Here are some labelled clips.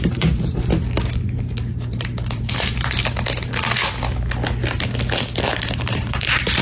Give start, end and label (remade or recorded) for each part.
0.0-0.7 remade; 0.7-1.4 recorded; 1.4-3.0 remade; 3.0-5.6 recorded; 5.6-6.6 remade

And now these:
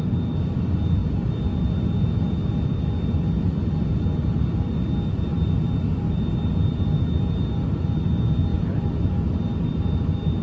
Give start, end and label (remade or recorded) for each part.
0.0-8.5 recorded; 8.5-9.1 remade; 9.1-10.4 recorded

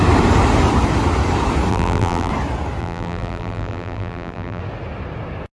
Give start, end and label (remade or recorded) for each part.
0.0-1.7 recorded; 1.7-2.3 remade; 2.3-2.8 recorded; 2.8-4.6 remade; 4.6-5.6 recorded